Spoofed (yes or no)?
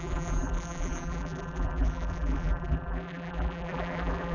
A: yes